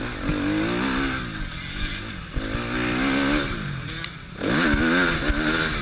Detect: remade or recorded recorded